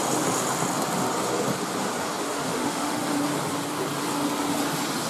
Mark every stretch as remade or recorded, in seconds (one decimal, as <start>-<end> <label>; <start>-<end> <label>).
0.0-2.2 recorded; 2.2-3.0 remade; 3.0-5.1 recorded